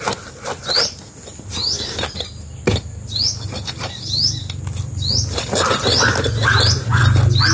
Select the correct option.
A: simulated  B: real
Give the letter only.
B